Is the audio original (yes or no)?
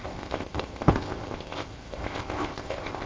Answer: no